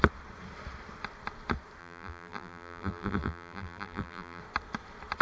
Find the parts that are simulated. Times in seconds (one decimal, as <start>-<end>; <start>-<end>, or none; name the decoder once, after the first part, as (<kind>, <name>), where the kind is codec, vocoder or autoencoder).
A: 1.8-4.4 (vocoder, BigVGAN v2)